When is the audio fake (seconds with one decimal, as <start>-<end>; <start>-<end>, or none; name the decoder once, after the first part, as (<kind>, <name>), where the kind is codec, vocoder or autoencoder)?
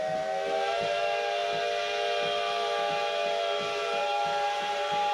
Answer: none